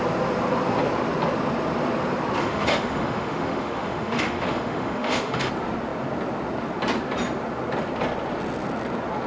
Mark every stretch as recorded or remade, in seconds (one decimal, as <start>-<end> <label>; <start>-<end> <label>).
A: 0.0-2.4 recorded; 2.4-5.5 remade; 5.5-9.3 recorded